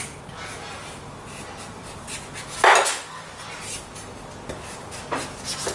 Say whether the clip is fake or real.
real